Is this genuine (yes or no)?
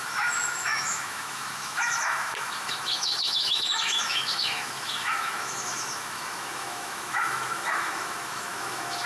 no